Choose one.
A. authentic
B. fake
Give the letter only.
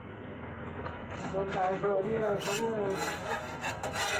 B